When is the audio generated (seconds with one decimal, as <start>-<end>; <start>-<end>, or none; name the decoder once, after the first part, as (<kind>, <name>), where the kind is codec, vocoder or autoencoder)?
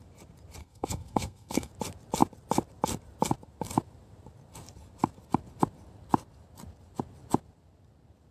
0.6-1.7 (codec, SNAC)